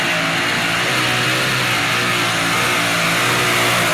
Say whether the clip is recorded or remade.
recorded